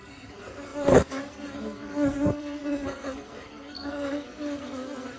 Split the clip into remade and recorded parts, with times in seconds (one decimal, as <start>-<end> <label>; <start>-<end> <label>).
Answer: 0.0-5.2 remade